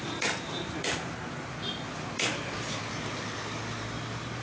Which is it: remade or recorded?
recorded